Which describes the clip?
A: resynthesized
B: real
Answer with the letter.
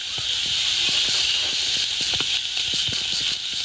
B